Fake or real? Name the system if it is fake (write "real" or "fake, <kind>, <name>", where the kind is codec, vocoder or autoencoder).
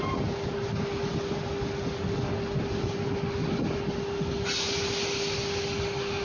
real